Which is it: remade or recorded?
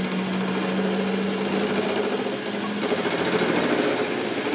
recorded